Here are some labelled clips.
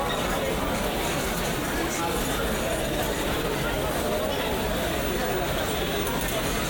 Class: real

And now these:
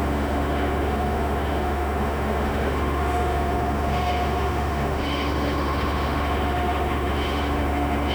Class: fake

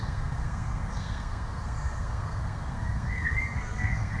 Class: fake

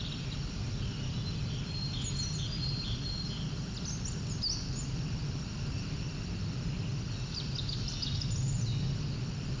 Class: real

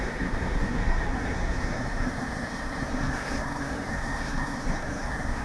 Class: fake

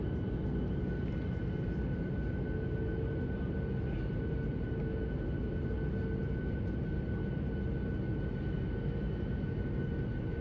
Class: real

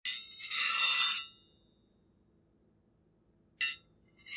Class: real